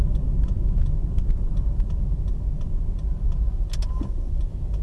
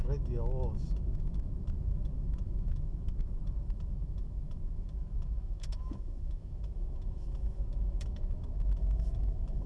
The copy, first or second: second